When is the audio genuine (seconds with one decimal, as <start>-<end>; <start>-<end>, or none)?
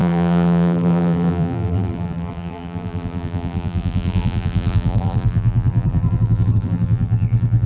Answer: none